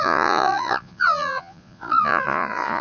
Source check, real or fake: fake